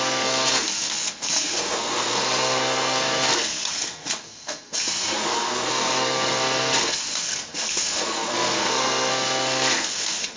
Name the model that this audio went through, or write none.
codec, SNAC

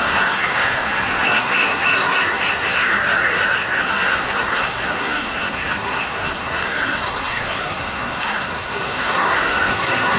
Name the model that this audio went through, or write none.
codec, SNAC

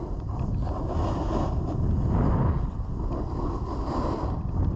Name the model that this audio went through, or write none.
none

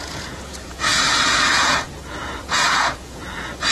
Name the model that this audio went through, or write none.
vocoder, Vocos